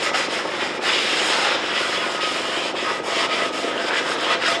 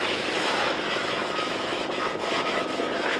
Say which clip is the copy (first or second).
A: second